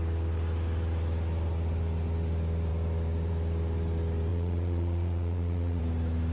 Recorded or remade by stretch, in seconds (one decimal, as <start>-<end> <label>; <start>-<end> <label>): 0.0-4.3 recorded; 4.3-5.8 remade; 5.8-6.3 recorded

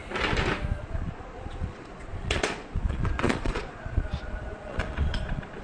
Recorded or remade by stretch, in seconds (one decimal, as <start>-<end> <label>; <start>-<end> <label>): 0.0-0.8 recorded; 0.8-5.6 remade

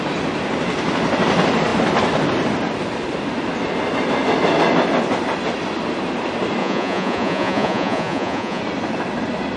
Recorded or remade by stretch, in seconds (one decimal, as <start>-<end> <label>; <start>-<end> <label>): 0.0-6.6 recorded; 6.6-8.6 remade; 8.6-9.6 recorded

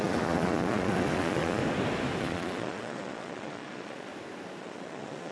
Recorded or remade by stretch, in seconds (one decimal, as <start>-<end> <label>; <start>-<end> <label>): 0.0-1.6 remade; 1.6-2.2 recorded; 2.2-4.1 remade; 4.1-4.6 recorded; 4.6-5.3 remade

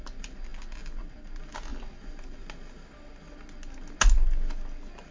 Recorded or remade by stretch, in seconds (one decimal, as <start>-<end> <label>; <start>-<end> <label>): 0.0-5.1 recorded